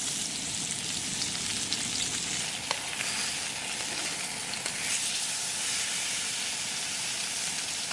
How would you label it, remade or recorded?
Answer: recorded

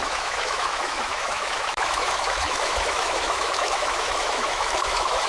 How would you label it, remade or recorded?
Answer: remade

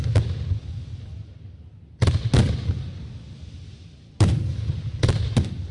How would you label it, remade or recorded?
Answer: recorded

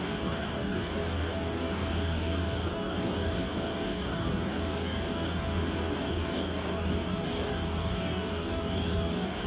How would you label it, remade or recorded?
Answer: remade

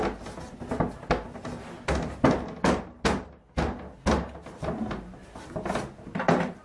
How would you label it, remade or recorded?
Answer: recorded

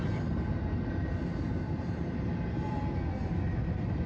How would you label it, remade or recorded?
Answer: recorded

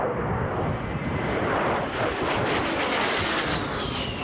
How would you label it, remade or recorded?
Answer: recorded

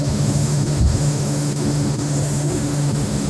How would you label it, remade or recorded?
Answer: remade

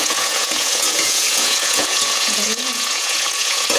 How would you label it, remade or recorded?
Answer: remade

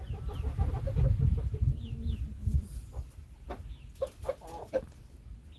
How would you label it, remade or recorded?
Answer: recorded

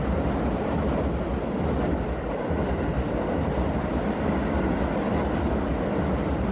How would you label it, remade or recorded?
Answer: recorded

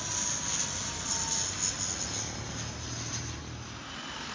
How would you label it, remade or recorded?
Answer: recorded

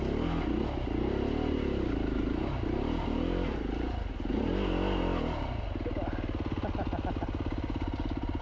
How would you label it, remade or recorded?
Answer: recorded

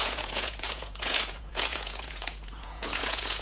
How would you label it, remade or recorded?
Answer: remade